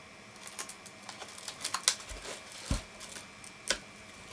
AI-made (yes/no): no